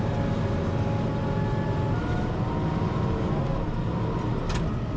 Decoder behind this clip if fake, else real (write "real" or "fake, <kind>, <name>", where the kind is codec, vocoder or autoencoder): real